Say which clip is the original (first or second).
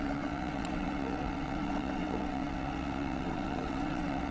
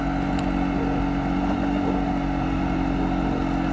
second